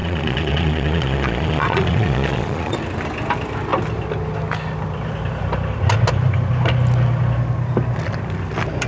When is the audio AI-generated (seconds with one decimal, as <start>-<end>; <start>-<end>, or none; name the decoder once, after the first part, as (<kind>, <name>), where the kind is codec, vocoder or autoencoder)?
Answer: 0.0-2.8 (vocoder, Vocos)